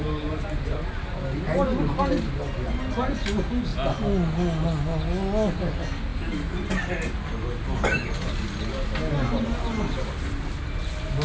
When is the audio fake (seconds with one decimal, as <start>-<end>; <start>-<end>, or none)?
none